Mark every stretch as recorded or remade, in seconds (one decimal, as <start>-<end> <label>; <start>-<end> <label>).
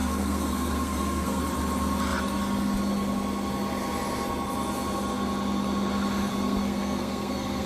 0.0-1.4 remade; 1.4-6.3 recorded; 6.3-7.7 remade